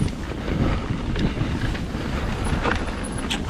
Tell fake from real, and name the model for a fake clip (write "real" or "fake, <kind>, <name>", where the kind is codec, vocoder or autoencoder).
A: real